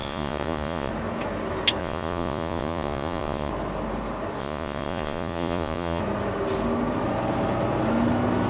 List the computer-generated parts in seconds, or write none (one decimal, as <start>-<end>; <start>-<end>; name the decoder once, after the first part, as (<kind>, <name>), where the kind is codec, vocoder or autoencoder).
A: 0.0-0.9 (vocoder, Vocos); 1.8-3.5; 4.4-6.0

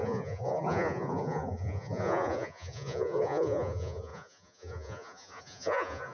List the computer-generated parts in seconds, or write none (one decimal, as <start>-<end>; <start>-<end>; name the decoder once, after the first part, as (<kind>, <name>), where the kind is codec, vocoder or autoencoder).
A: 0.0-6.1 (vocoder, Vocos)

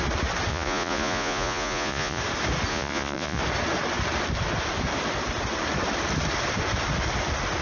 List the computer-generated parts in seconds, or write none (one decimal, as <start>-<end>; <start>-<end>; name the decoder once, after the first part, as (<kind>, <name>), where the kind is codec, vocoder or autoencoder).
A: 0.5-2.2 (vocoder, Vocos); 2.7-3.4

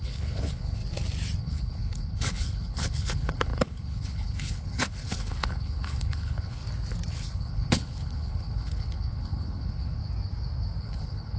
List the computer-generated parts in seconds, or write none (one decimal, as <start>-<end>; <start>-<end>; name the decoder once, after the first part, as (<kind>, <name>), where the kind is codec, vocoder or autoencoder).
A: 0.0-0.8 (codec, HILCodec); 1.4-6.6; 7.1-10.0; 10.8-11.4

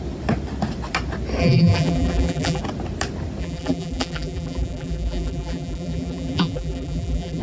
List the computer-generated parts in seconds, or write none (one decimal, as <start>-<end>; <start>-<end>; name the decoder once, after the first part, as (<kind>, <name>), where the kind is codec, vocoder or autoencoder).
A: 1.4-2.6 (vocoder, BigVGAN v2); 3.4-7.4

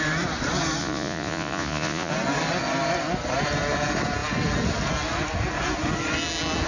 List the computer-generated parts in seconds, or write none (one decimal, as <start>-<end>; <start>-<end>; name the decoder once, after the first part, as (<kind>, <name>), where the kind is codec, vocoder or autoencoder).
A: 0.8-2.1 (vocoder, Vocos)

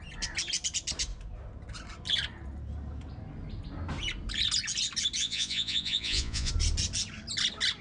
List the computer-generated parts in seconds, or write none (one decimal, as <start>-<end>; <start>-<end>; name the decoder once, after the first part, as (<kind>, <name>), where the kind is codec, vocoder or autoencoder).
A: 5.2-6.5 (vocoder, Vocos)

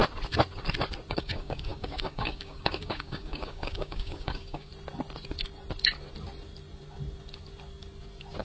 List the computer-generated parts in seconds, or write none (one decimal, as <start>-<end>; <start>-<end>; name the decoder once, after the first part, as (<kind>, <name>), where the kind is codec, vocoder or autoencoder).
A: 1.1-4.7 (codec, DAC)